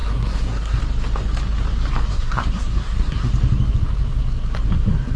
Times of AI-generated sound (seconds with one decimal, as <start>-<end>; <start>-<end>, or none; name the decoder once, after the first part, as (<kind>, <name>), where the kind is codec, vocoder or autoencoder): 0.0-0.8 (codec, SNAC); 2.1-3.3